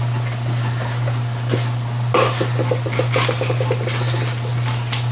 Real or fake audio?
real